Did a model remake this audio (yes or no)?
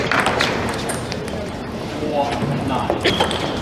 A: yes